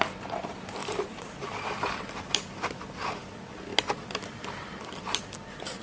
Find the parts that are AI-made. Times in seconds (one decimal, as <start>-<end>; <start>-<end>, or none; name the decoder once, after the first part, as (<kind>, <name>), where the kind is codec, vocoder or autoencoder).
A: 0.8-2.2 (vocoder, BigVGAN v2)